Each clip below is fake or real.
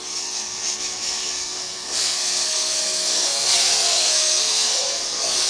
fake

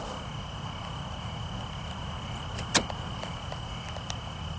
real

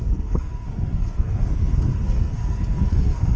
fake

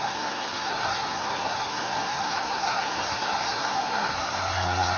fake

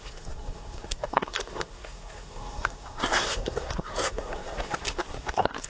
fake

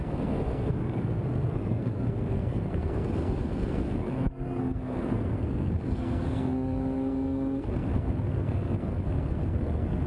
fake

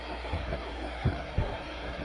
fake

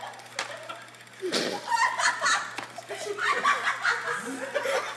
real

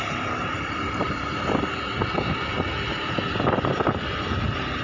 real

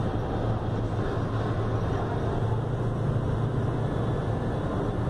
real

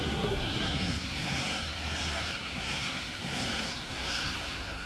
fake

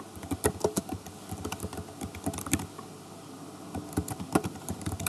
real